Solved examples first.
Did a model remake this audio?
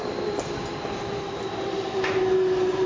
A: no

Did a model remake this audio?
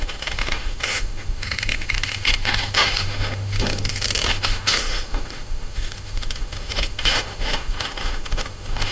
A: yes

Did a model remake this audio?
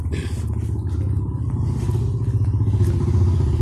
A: no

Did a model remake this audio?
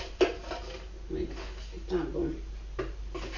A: no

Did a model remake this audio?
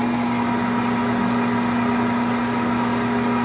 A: no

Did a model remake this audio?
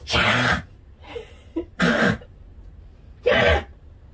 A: yes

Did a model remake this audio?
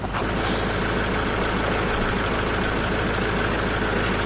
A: no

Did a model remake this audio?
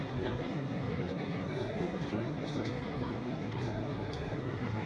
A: yes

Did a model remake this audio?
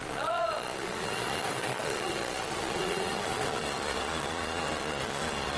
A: yes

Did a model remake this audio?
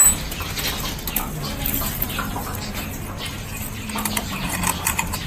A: no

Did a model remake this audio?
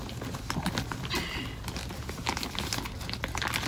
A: no